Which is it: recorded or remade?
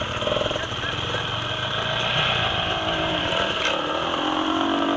recorded